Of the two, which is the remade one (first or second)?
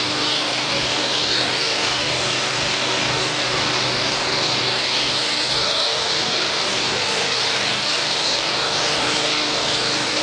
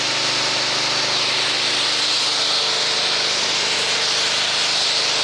first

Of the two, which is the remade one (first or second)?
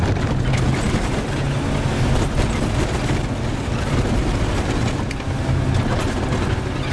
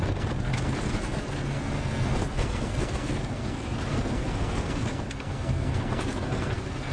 second